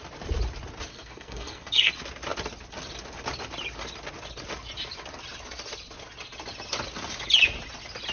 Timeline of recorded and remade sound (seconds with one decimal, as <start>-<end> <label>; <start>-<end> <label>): 0.0-0.9 recorded; 0.9-1.9 remade; 1.9-8.1 recorded